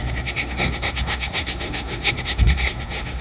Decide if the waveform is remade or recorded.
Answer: remade